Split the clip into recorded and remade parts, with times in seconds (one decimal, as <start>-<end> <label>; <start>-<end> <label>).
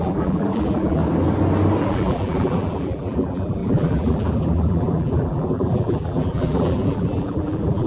0.0-1.0 remade; 1.0-1.8 recorded; 1.8-7.9 remade